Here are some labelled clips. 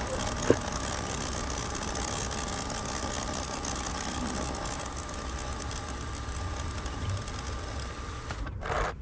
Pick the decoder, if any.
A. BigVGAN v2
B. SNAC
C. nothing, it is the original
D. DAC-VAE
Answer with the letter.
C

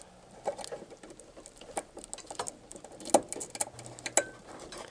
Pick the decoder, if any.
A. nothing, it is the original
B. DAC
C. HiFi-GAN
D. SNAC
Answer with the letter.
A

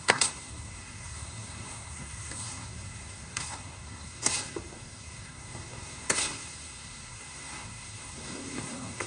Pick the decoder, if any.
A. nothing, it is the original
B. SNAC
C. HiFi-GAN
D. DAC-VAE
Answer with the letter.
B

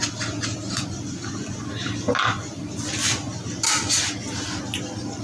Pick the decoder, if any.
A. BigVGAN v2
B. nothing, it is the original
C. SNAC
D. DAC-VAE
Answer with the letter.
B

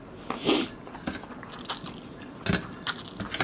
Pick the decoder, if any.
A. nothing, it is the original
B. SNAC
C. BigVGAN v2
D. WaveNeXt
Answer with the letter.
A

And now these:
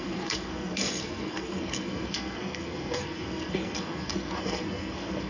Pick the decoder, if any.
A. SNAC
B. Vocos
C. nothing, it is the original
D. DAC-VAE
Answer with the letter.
A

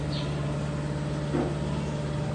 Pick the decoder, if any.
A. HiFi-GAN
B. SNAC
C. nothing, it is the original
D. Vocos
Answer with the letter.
C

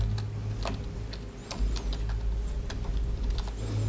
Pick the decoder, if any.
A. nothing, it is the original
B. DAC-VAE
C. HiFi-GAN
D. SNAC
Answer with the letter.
A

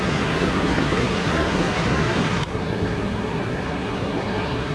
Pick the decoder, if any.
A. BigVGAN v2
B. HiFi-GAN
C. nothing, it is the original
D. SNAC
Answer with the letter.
D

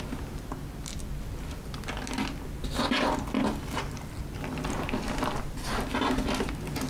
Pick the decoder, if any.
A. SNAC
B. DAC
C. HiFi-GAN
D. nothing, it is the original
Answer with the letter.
D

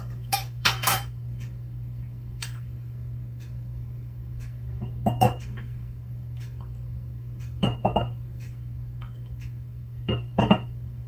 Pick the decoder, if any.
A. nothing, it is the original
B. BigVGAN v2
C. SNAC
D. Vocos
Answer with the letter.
C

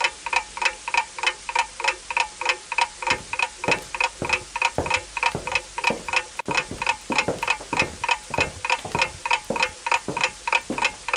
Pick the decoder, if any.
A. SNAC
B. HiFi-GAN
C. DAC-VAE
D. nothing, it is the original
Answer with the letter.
D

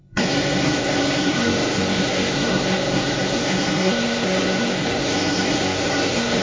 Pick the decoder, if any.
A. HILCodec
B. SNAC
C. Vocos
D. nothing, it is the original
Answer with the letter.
B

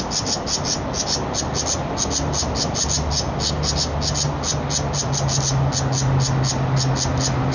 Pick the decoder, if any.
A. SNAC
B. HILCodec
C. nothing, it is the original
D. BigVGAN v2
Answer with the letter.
C